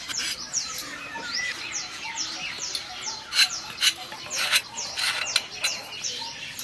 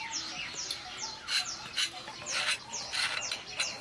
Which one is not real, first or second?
first